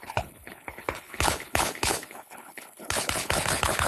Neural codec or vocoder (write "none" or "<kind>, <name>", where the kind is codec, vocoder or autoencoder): codec, HILCodec